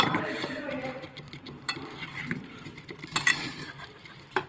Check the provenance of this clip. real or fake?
fake